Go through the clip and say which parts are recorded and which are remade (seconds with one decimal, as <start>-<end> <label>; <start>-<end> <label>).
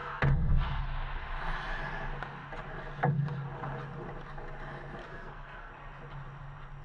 0.0-0.8 remade; 0.8-5.0 recorded; 5.0-5.7 remade; 5.7-6.8 recorded